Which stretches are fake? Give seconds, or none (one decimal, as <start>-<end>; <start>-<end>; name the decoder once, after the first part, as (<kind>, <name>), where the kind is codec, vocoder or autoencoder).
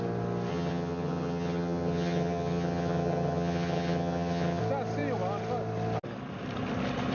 0.5-4.6 (vocoder, HiFi-GAN)